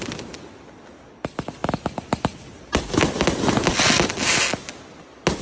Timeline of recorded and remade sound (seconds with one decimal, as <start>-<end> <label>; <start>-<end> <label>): 0.0-5.4 recorded